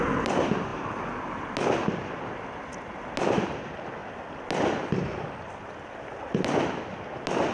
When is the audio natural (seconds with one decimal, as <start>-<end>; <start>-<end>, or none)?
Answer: 0.0-7.5